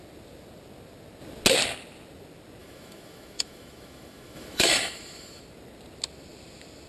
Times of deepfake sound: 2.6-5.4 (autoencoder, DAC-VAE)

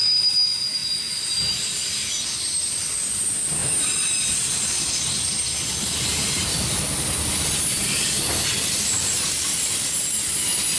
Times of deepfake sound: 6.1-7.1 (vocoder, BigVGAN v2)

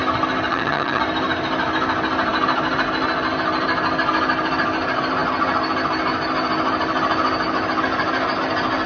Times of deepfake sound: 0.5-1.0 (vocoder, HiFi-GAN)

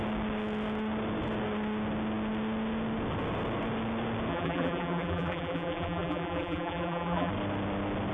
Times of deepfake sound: 4.3-7.3 (vocoder, BigVGAN v2)

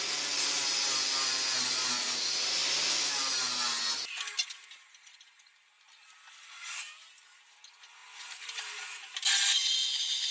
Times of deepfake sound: none

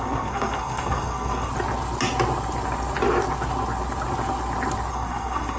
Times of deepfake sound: 0.0-1.5 (codec, SNAC); 4.9-5.6

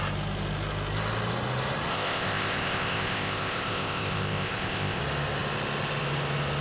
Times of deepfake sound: 1.9-5.0 (codec, ZipCodec)

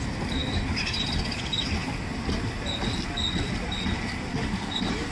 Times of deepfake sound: none